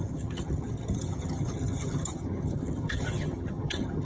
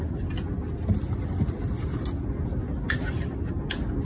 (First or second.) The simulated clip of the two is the first